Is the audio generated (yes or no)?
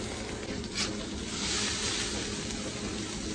no